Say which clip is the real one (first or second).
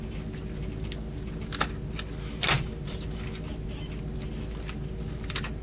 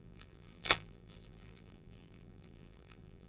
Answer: first